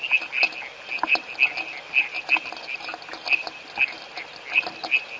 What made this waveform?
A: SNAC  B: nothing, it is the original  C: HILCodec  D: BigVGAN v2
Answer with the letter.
B